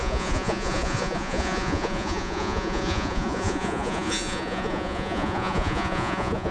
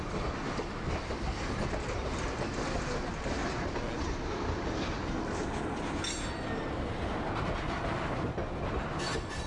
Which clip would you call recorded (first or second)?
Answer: second